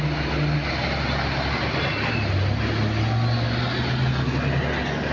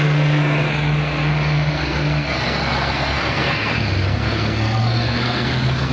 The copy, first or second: second